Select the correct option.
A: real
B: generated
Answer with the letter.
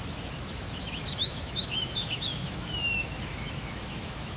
B